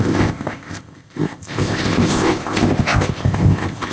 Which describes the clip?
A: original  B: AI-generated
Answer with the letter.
B